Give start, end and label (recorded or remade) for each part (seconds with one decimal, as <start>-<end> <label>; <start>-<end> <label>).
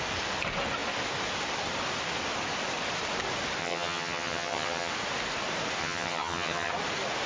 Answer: 0.0-3.6 recorded; 3.6-4.9 remade; 4.9-5.8 recorded; 5.8-6.7 remade; 6.7-7.3 recorded